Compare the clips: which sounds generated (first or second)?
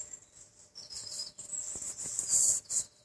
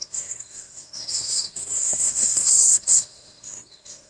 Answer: second